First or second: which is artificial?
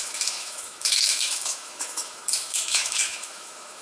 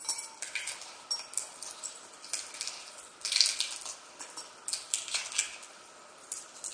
first